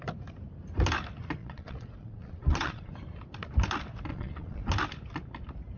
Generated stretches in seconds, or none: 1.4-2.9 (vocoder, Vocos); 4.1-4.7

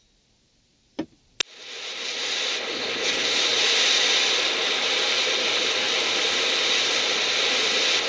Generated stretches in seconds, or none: none

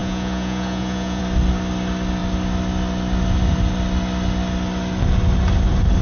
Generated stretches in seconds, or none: 0.0-1.2 (vocoder, Vocos)

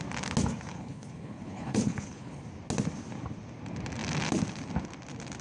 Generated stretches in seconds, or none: 0.7-2.4 (codec, HILCodec)

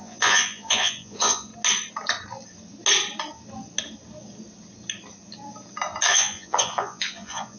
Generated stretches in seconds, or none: 0.0-1.5 (vocoder, Vocos); 6.1-7.6

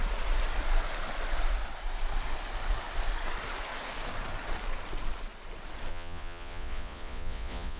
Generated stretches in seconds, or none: 5.9-7.8 (vocoder, Vocos)

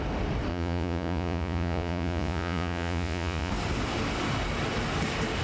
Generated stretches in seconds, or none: 0.5-3.5 (vocoder, Vocos)

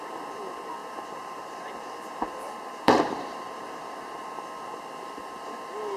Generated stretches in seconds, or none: 0.8-4.4 (vocoder, BigVGAN v2)